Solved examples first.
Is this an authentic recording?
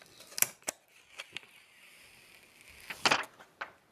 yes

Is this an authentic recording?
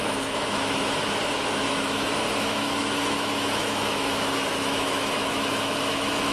no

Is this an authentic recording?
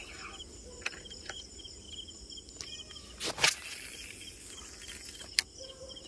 yes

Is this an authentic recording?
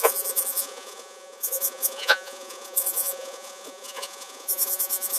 no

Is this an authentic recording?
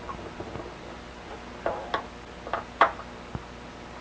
yes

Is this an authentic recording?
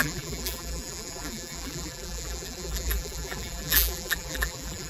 no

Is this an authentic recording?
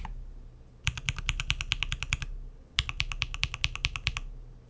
yes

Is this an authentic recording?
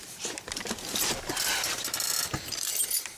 no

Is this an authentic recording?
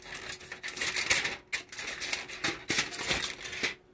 yes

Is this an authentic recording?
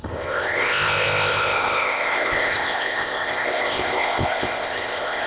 no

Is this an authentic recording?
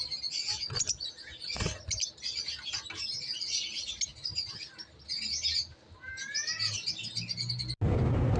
yes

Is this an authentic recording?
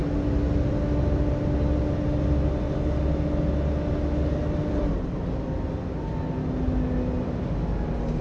yes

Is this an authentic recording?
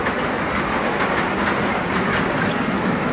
yes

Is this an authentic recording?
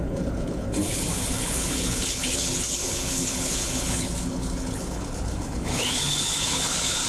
no